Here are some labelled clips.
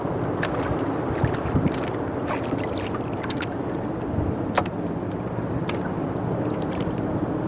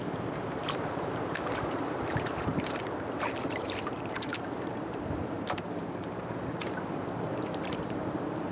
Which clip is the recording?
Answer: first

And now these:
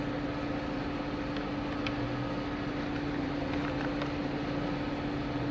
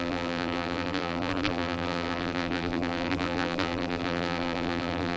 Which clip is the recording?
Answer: first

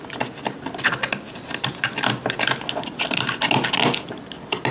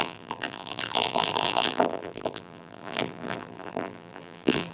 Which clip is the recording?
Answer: first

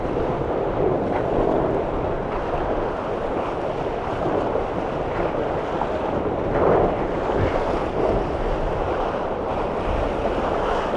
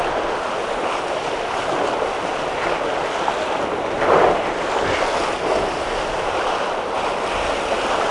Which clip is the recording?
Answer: second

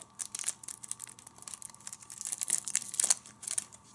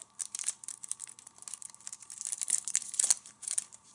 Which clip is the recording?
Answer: first